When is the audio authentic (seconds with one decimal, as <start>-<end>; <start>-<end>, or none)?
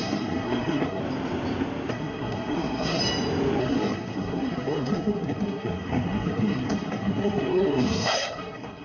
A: 1.0-1.9; 3.0-3.6